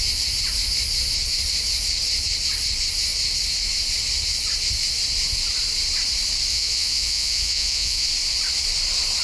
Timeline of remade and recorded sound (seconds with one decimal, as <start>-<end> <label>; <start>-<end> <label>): 0.0-6.5 recorded; 6.5-8.1 remade; 8.1-9.2 recorded